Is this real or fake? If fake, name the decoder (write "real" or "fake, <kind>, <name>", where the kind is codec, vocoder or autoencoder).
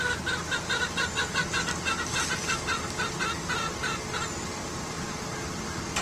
real